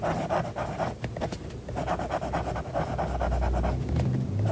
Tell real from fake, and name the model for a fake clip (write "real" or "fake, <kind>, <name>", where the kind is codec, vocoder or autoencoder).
real